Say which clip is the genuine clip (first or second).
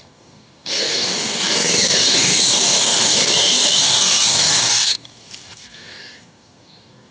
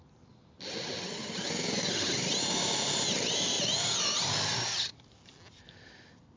second